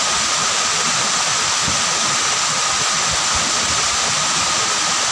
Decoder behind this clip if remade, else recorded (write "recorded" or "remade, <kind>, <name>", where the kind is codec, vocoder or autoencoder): recorded